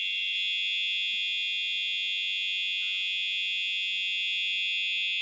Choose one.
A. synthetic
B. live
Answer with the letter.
B